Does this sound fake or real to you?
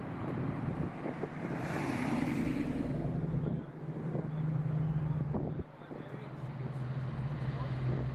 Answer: real